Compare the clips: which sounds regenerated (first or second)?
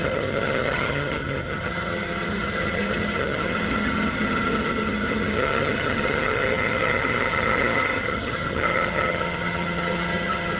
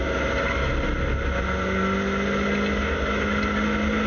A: first